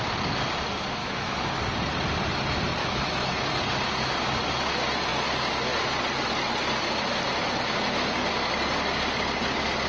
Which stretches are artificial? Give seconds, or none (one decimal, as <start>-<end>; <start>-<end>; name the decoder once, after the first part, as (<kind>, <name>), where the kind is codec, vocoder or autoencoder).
1.0-1.6 (autoencoder, DAC-VAE); 2.8-3.4